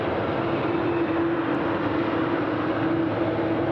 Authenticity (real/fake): real